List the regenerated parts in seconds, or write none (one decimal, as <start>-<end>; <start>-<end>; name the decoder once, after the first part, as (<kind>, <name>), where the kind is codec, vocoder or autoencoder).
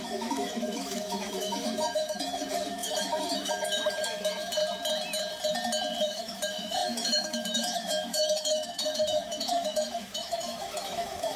0.0-4.6 (autoencoder, DAC-VAE); 6.0-11.4